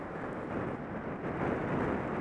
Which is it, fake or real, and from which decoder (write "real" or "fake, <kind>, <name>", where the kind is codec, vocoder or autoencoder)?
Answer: real